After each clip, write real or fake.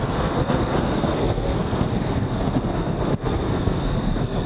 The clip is fake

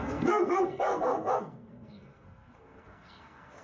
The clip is fake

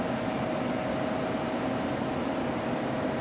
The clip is real